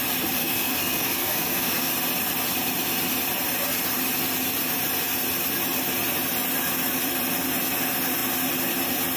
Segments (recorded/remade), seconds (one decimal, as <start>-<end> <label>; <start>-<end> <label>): 0.0-0.4 recorded; 0.4-1.9 remade; 1.9-9.2 recorded